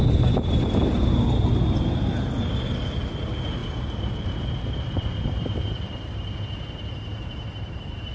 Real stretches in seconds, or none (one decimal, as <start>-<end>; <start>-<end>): 0.0-3.6